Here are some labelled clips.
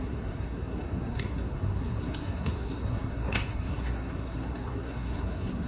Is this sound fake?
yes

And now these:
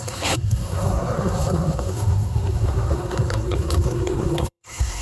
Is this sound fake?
yes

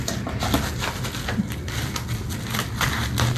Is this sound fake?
no